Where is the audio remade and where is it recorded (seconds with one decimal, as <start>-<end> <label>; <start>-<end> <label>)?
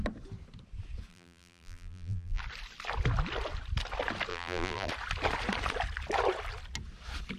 0.0-1.1 recorded; 1.1-2.4 remade; 2.4-4.3 recorded; 4.3-4.9 remade; 4.9-7.4 recorded